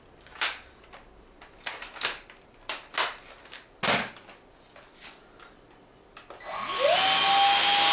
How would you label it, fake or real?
real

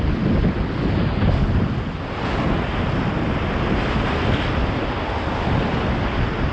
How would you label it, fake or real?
real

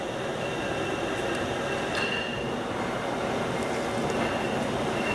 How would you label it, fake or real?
real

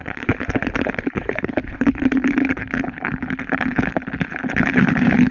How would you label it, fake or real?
fake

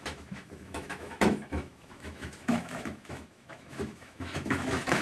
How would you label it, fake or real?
fake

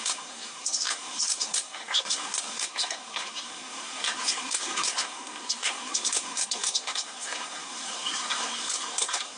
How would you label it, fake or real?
fake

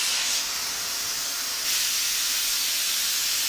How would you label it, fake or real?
real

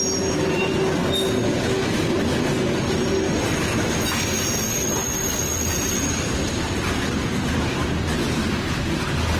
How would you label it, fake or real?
real